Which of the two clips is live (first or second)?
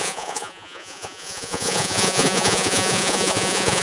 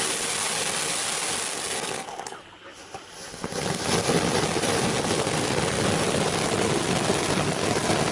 second